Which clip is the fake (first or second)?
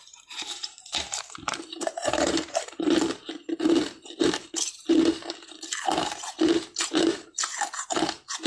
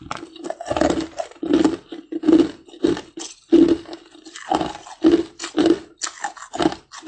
first